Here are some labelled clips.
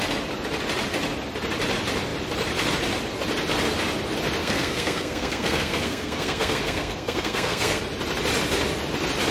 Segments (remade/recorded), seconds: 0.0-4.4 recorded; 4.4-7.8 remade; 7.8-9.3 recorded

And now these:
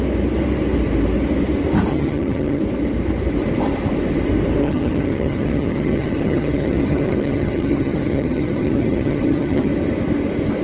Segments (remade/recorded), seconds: 0.0-1.9 recorded; 1.9-2.6 remade; 2.6-4.6 recorded; 4.6-9.7 remade; 9.7-10.6 recorded

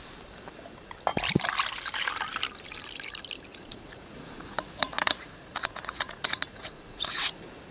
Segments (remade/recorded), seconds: 0.0-3.5 recorded; 3.5-7.3 remade; 7.3-7.7 recorded

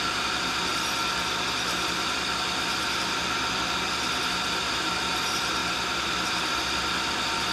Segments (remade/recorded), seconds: 0.0-7.5 recorded

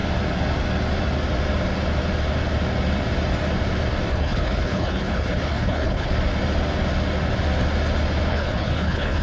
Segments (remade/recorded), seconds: 0.0-4.1 recorded; 4.1-6.1 remade; 6.1-8.3 recorded; 8.3-9.2 remade